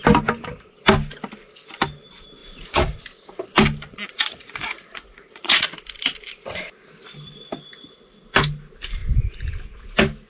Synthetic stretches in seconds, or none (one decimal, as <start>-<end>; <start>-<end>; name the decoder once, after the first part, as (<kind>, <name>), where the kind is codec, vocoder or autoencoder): 2.4-3.0 (vocoder, Vocos); 3.9-5.7